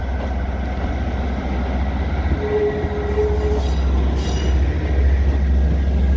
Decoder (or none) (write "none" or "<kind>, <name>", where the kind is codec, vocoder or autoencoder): none